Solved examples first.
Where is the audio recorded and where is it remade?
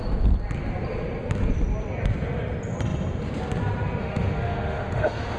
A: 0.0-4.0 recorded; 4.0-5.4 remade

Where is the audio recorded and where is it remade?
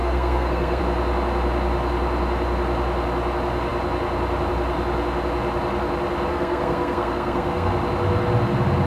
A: 0.0-0.8 remade; 0.8-6.3 recorded; 6.3-7.7 remade; 7.7-8.9 recorded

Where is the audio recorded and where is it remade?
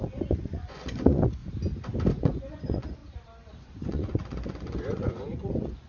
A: 0.0-1.4 remade; 1.4-2.1 recorded; 2.1-3.0 remade; 3.0-3.6 recorded; 3.6-5.9 remade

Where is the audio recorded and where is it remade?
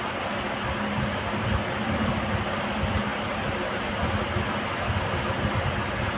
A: 0.0-6.2 recorded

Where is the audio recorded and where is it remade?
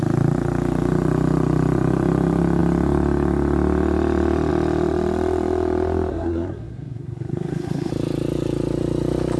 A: 0.0-6.1 recorded; 6.1-7.9 remade; 7.9-9.4 recorded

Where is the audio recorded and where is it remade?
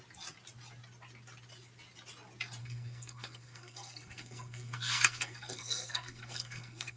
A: 0.0-2.6 recorded; 2.6-7.0 remade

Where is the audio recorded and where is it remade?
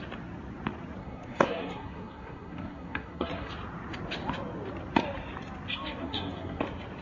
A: 0.0-1.0 recorded; 1.0-3.5 remade; 3.5-6.0 recorded; 6.0-6.6 remade; 6.6-7.0 recorded